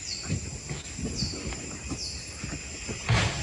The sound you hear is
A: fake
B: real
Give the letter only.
B